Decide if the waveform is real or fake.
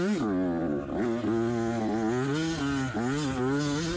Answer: real